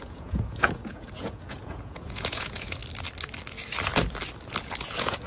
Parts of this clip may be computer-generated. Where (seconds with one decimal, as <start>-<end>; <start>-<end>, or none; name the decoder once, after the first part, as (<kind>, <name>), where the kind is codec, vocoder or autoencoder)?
0.0-2.8 (vocoder, Vocos); 4.6-5.3